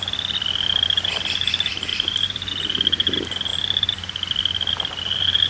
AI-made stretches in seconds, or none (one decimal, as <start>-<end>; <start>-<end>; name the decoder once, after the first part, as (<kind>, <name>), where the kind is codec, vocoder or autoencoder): 1.9-2.5 (vocoder, BigVGAN v2)